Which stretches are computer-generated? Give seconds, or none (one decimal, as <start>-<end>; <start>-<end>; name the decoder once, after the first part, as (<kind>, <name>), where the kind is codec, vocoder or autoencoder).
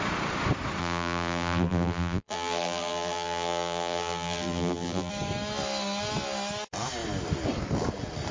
0.8-5.1 (vocoder, BigVGAN v2)